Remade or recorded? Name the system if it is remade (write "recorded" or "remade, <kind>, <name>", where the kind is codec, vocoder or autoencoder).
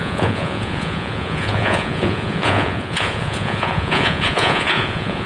remade, vocoder, Vocos